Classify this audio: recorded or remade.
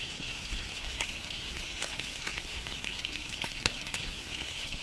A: remade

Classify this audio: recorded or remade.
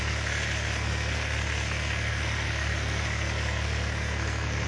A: remade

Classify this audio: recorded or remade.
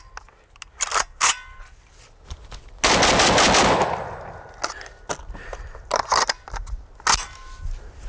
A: recorded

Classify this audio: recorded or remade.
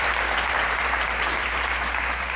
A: remade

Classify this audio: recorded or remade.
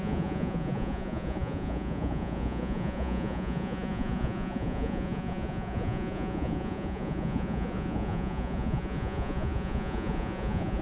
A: remade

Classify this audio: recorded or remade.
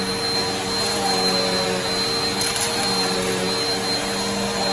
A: recorded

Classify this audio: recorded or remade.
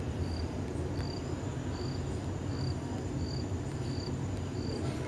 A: recorded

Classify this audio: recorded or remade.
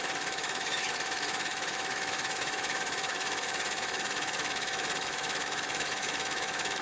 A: remade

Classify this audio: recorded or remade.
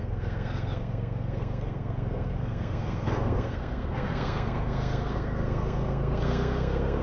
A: remade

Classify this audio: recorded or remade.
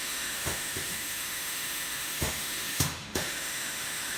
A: remade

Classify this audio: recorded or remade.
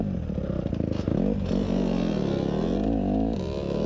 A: recorded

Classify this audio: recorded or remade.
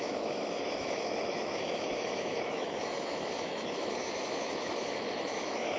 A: remade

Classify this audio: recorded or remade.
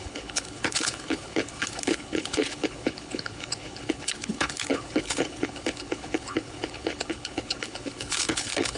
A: remade